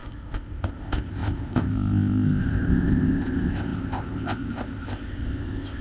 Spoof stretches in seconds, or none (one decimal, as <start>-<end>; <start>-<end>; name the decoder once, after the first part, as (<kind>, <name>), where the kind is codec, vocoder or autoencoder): 0.0-5.8 (codec, ZipCodec)